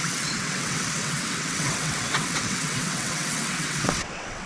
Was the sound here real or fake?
fake